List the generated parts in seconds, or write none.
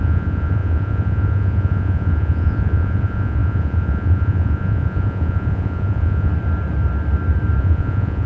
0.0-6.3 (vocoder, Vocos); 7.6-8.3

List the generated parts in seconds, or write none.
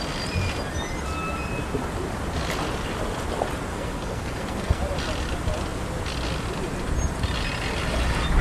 3.7-4.8 (codec, SNAC)